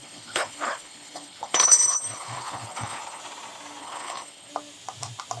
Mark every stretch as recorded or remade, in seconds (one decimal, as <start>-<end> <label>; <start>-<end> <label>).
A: 0.0-3.2 remade; 3.2-3.8 recorded; 3.8-4.5 remade; 4.5-5.4 recorded